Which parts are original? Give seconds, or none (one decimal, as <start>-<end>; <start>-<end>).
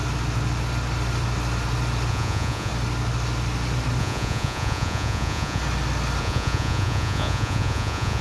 0.0-2.1; 2.7-4.0; 5.6-6.2